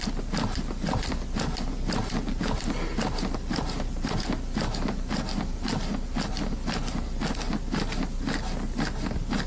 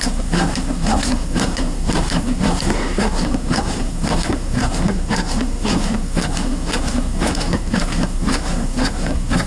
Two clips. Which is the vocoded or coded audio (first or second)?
second